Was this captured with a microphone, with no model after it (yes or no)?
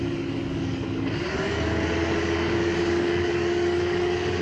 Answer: no